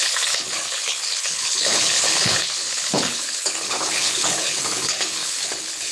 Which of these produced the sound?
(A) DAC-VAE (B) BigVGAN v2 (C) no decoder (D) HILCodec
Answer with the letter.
D